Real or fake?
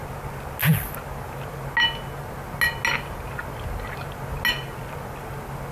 real